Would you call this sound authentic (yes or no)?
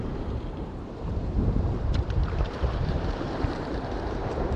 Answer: no